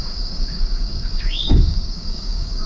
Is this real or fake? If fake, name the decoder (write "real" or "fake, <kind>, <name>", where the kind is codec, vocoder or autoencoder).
fake, codec, DAC